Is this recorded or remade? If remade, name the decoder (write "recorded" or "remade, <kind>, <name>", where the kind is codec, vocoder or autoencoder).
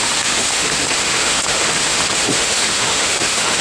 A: remade, autoencoder, DAC-VAE